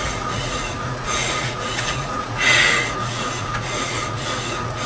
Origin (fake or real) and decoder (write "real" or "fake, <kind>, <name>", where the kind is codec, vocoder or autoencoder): fake, vocoder, Vocos